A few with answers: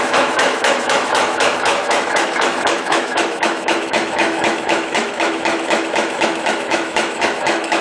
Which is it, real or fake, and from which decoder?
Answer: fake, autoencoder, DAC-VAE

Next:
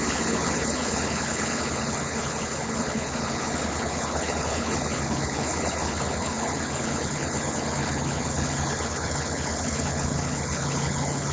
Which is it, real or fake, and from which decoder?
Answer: fake, codec, HILCodec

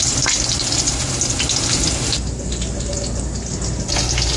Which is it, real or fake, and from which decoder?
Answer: real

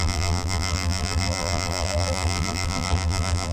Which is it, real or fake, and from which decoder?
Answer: fake, vocoder, BigVGAN v2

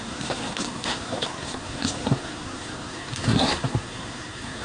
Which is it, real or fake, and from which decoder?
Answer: fake, codec, SNAC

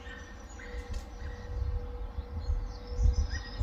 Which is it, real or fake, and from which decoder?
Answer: real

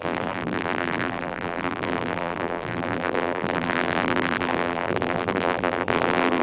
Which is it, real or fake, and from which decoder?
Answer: fake, vocoder, BigVGAN v2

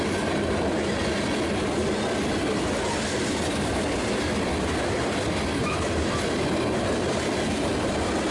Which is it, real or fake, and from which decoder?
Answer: real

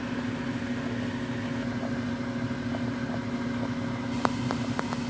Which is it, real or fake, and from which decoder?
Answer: real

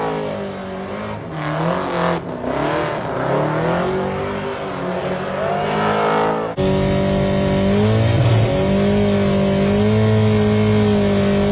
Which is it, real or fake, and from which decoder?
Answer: real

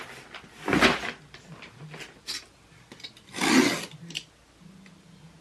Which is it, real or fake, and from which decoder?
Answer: real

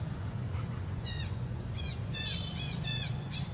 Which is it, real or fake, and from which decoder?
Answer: fake, vocoder, Vocos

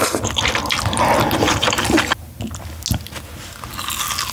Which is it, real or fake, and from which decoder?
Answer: real